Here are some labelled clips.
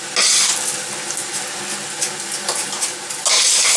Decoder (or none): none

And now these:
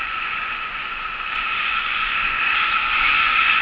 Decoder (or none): vocoder, Vocos